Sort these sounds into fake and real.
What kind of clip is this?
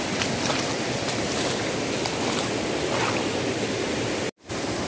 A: real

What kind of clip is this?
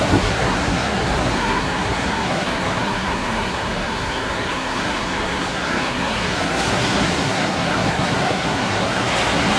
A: fake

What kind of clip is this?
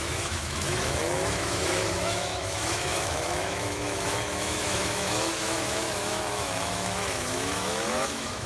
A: fake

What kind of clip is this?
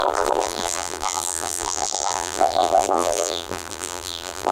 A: fake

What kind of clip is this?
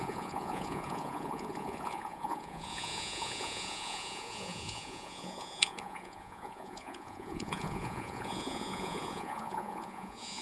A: fake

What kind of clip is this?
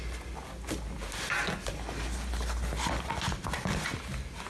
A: real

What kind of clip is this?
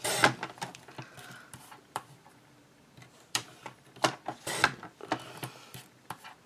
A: fake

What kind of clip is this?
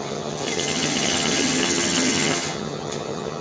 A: fake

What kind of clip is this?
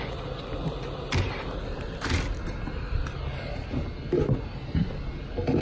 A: real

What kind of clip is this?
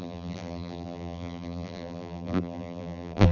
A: fake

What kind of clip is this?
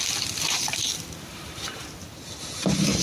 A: real